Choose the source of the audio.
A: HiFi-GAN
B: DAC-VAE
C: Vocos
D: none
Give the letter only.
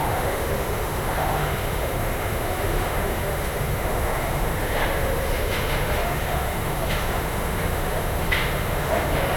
B